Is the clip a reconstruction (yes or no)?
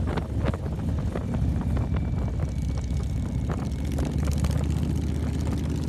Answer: no